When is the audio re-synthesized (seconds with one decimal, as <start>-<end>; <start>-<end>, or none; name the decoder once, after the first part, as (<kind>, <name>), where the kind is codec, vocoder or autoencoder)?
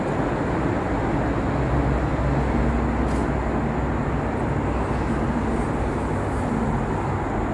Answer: none